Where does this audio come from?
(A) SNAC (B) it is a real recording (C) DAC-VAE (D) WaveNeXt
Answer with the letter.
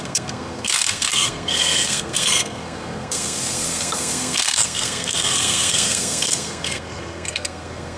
A